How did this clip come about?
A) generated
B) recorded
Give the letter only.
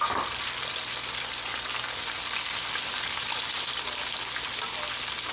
A